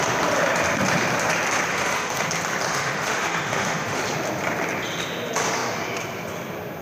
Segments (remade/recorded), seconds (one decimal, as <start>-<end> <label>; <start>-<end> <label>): 0.0-1.7 recorded; 1.7-2.2 remade; 2.2-2.7 recorded; 2.7-4.0 remade; 4.0-6.8 recorded